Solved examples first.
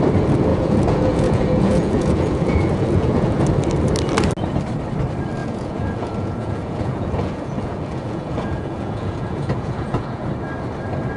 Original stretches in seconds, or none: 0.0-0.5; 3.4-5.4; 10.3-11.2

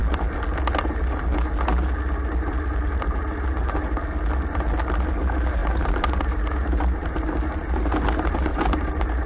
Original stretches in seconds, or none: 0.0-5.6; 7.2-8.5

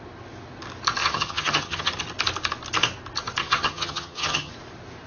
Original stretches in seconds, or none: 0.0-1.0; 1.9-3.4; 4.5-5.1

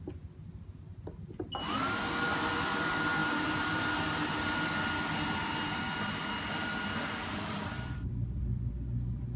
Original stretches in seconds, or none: 0.0-3.2; 3.9-6.6; 8.7-9.4

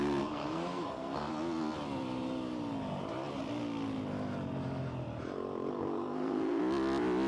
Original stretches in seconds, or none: 1.3-5.7; 6.6-7.3

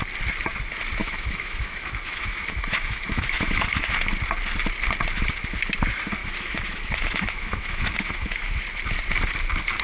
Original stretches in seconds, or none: 0.0-1.0; 3.9-6.2; 8.6-9.8

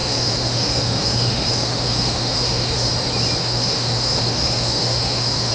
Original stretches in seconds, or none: 2.9-3.4